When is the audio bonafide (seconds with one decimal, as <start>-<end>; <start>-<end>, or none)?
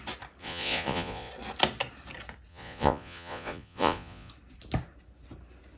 0.0-0.4; 1.3-2.5; 4.3-5.8